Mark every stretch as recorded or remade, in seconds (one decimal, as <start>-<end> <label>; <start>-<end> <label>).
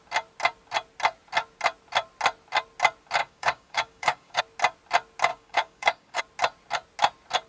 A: 0.0-3.2 recorded; 3.2-4.4 remade; 4.4-5.3 recorded; 5.3-6.2 remade; 6.2-7.5 recorded